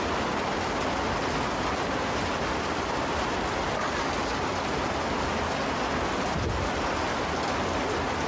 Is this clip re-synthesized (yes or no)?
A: no